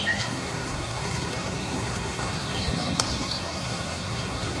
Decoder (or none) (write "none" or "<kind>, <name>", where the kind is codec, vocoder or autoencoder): codec, SNAC